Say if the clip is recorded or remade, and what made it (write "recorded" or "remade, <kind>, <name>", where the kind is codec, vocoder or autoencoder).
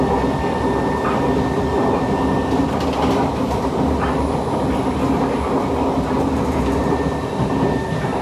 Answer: recorded